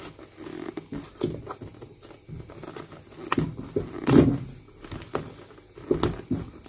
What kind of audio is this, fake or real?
real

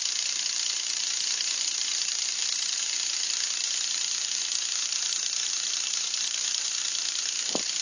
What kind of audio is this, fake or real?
fake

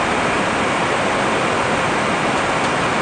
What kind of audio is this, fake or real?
real